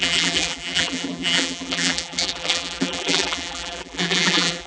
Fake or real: fake